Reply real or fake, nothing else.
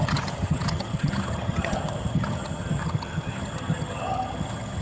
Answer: fake